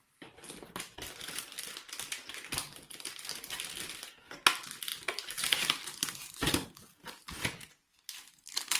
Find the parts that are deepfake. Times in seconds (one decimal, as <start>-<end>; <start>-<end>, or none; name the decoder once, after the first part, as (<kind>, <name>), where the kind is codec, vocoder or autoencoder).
none